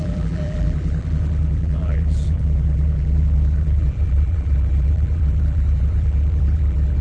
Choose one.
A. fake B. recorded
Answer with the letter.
A